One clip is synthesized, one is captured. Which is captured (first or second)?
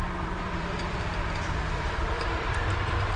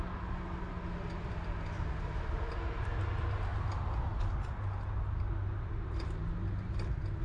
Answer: second